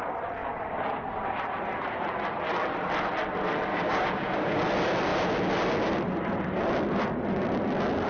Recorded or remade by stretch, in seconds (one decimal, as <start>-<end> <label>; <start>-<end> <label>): 0.0-3.7 recorded; 3.7-4.6 remade; 4.6-8.1 recorded